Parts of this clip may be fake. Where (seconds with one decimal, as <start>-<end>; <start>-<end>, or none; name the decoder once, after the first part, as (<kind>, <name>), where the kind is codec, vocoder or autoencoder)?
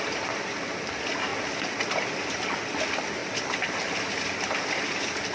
none